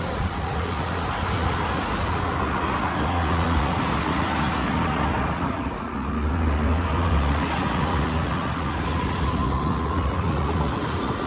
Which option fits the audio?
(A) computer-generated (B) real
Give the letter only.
A